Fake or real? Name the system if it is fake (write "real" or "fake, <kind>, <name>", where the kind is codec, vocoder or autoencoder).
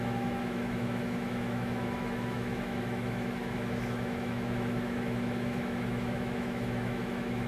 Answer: fake, autoencoder, DAC-VAE